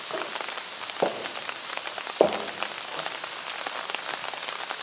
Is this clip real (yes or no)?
yes